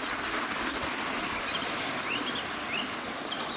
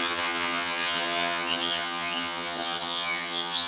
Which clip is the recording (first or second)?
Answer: first